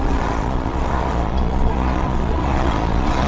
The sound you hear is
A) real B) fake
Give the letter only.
B